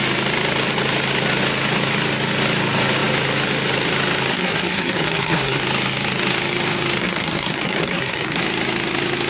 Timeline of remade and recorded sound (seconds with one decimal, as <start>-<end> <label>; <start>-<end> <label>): 0.0-4.3 recorded; 4.3-5.6 remade; 5.6-7.0 recorded; 7.0-8.4 remade; 8.4-9.3 recorded